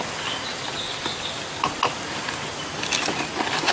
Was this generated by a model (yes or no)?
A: no